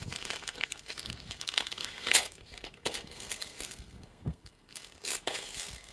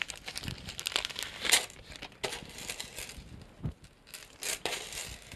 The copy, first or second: first